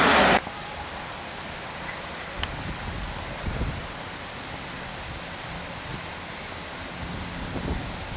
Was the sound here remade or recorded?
recorded